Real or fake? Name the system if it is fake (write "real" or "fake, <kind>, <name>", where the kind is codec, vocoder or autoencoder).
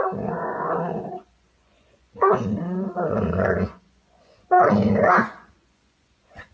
fake, vocoder, Vocos